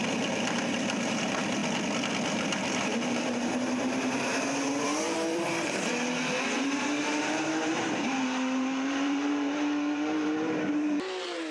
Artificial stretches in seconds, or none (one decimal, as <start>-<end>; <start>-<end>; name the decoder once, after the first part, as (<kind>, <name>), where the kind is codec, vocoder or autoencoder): 0.0-1.6 (vocoder, BigVGAN v2); 2.3-11.5

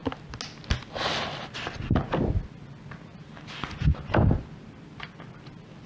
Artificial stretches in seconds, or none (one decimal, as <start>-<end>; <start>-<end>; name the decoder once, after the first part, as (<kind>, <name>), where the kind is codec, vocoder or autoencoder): none

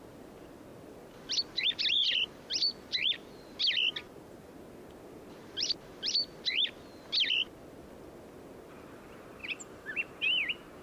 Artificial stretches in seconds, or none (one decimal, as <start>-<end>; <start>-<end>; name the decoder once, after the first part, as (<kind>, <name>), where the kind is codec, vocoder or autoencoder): 9.4-10.1 (vocoder, BigVGAN v2)

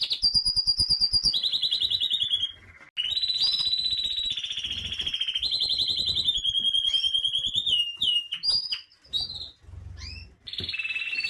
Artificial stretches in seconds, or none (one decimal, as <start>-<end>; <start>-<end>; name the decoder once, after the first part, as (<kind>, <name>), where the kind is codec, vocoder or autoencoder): 1.6-2.4 (vocoder, BigVGAN v2)